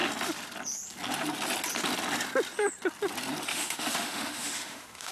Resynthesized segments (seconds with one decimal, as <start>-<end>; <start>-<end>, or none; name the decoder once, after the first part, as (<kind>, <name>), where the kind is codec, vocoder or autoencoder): 3.5-5.1 (autoencoder, DAC-VAE)